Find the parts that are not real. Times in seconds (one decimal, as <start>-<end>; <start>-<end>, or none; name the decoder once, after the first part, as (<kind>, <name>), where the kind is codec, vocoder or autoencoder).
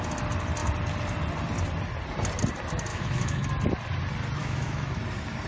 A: 2.9-3.5 (autoencoder, DAC-VAE); 4.4-5.0